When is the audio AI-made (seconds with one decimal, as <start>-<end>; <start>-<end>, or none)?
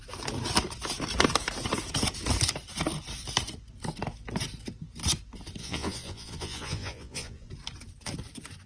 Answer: 5.6-7.5